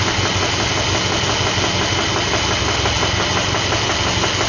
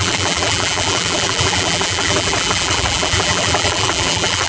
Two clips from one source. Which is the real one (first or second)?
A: first